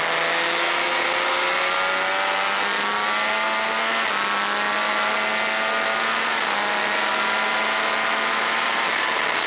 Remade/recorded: recorded